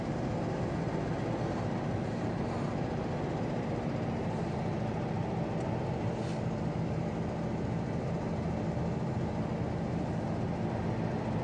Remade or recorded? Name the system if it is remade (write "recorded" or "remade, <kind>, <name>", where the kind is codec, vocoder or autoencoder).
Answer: recorded